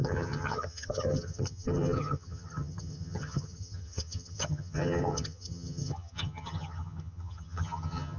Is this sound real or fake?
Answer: fake